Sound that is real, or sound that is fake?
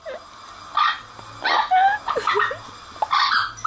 real